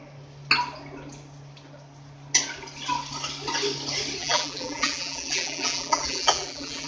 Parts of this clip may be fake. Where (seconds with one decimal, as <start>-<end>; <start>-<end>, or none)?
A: 4.2-6.9